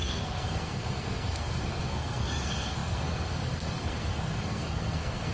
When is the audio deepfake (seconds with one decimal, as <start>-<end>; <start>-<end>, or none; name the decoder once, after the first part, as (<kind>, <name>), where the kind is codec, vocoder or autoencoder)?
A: 0.0-5.3 (codec, SNAC)